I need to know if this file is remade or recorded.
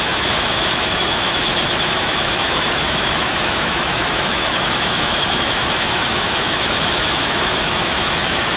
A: remade